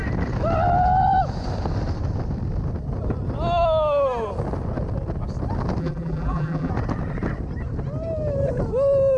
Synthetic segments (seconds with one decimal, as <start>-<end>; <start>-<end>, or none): 5.8-6.7